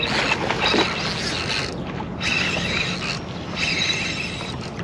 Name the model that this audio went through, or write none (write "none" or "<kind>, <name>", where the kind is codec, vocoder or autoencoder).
none